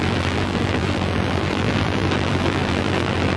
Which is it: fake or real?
fake